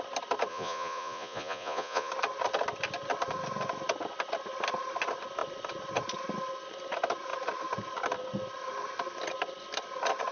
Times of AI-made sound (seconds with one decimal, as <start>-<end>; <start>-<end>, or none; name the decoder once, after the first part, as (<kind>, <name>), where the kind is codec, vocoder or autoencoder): 0.5-2.1 (vocoder, Vocos)